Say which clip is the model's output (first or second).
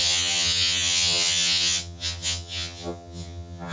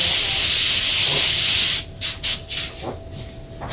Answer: first